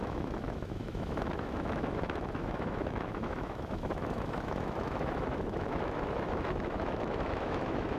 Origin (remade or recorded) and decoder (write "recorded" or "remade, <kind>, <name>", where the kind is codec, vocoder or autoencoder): remade, autoencoder, DAC-VAE